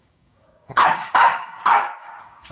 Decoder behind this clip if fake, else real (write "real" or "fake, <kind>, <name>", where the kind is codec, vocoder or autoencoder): fake, codec, DAC